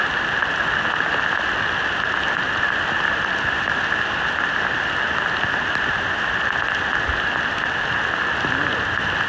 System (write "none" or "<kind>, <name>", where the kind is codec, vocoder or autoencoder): none